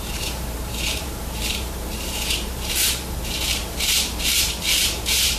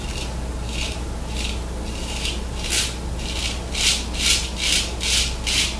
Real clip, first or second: second